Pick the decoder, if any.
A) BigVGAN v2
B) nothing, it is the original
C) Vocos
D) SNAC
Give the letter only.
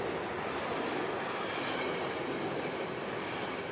B